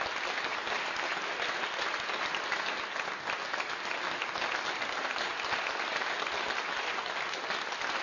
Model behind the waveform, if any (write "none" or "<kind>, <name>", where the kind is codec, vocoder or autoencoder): none